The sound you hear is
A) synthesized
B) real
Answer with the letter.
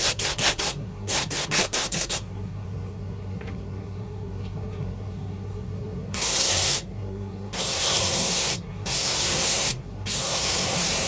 A